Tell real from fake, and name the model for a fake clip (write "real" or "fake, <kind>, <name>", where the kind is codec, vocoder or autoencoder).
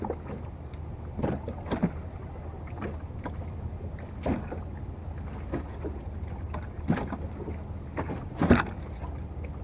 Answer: real